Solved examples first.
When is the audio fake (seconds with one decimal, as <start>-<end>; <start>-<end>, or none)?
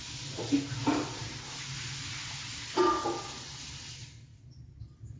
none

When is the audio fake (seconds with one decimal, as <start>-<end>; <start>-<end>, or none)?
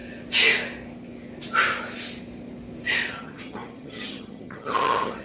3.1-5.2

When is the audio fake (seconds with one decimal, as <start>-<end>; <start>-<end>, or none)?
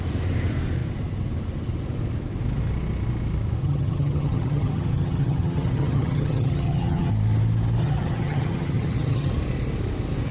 3.6-7.1; 7.8-9.3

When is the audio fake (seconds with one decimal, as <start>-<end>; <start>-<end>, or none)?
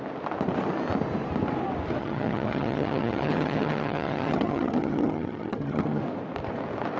2.0-6.0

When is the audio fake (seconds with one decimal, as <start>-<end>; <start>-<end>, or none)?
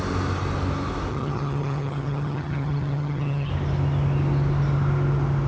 1.1-3.5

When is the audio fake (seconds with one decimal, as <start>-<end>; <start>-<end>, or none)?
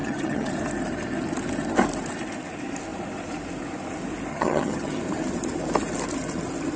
0.0-0.5; 4.3-5.0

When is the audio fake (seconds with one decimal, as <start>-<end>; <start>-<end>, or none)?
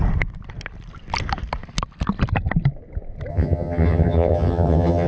3.3-5.1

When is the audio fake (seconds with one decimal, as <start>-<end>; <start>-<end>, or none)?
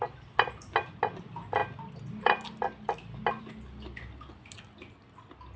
none